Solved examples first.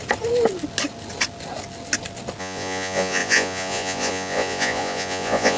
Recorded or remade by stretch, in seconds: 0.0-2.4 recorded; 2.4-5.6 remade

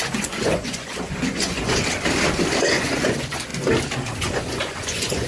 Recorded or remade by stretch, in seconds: 0.0-1.8 remade; 1.8-2.7 recorded; 2.7-3.5 remade; 3.5-4.2 recorded; 4.2-5.3 remade

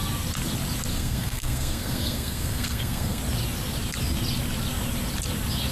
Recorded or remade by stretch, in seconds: 0.0-0.9 recorded; 0.9-3.2 remade; 3.2-5.7 recorded

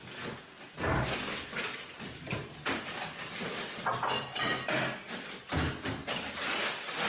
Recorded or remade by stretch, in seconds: 0.0-7.1 recorded

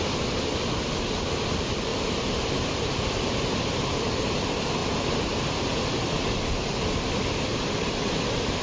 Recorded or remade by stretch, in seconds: 0.0-1.9 recorded; 1.9-2.9 remade; 2.9-8.6 recorded

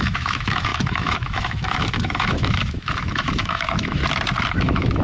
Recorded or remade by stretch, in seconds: 0.0-4.0 remade; 4.0-4.5 recorded; 4.5-5.0 remade